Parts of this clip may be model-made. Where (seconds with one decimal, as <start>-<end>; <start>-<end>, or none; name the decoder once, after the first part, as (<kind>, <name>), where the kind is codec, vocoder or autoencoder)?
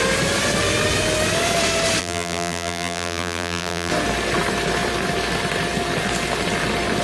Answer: 2.0-3.9 (vocoder, BigVGAN v2)